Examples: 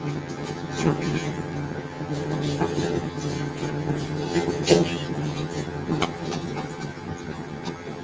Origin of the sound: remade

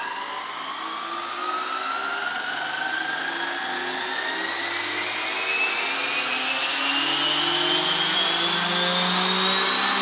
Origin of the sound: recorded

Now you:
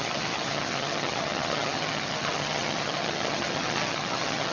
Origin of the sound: remade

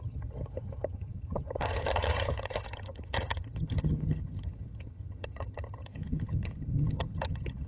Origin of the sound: remade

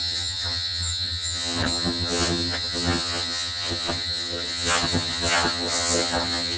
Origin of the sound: remade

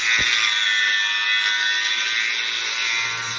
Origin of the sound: recorded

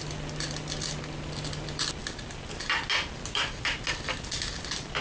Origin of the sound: recorded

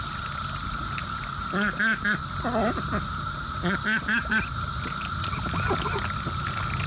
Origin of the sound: recorded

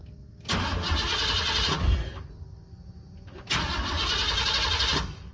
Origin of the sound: recorded